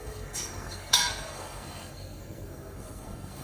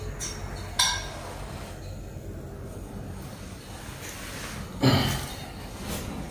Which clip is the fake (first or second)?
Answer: first